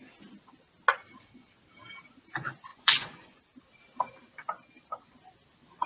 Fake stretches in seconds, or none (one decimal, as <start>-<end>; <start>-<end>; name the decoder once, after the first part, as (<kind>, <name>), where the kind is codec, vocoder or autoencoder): 2.7-3.4 (vocoder, Vocos)